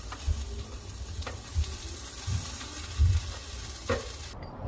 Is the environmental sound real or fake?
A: real